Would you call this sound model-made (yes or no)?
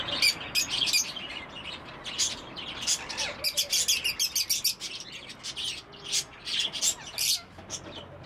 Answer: no